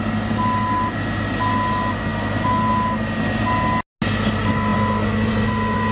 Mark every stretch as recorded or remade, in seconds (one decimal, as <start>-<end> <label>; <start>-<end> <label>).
0.0-5.9 recorded